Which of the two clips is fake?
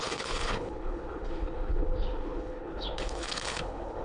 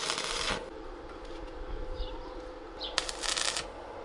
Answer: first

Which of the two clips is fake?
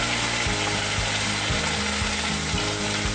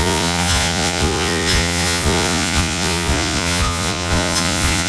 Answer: second